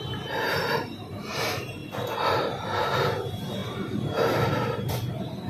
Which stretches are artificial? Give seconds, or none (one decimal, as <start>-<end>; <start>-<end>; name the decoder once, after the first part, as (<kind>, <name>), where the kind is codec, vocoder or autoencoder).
0.0-1.8 (vocoder, BigVGAN v2); 2.6-5.5